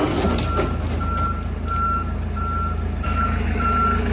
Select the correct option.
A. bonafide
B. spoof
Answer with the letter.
A